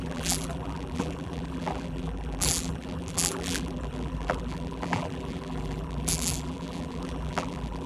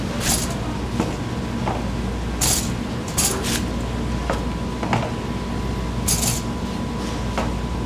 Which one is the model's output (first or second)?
first